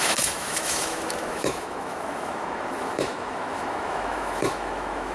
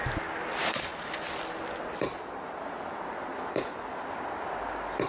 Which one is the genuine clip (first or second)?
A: second